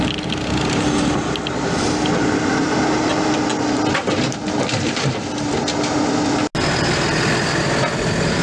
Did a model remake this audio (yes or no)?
no